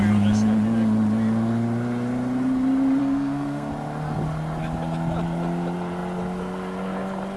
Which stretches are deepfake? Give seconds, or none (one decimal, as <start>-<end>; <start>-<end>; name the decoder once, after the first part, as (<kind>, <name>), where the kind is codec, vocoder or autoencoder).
3.0-3.7 (codec, SNAC)